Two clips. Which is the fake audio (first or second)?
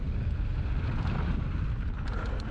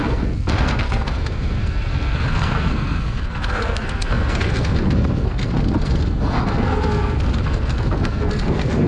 second